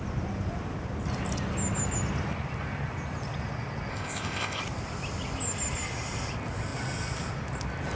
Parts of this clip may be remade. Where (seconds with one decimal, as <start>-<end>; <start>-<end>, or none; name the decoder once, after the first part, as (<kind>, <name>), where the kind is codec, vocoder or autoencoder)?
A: 3.9-4.6 (codec, ZipCodec)